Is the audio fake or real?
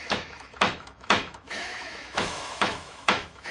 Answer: fake